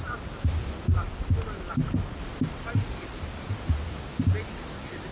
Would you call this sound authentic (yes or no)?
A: yes